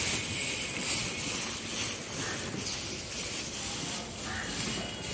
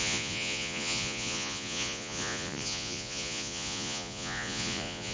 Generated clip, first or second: second